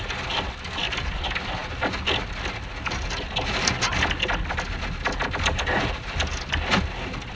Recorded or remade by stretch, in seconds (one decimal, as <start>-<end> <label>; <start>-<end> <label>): 0.0-7.4 recorded